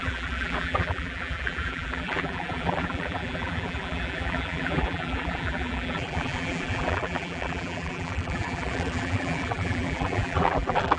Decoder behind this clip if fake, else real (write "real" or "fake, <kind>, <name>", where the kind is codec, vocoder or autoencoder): fake, vocoder, BigVGAN v2